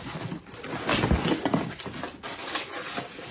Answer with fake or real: real